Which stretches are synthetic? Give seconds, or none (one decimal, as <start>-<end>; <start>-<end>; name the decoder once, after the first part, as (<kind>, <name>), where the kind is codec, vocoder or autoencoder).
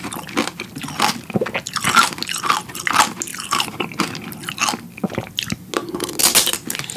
3.3-3.9 (vocoder, BigVGAN v2)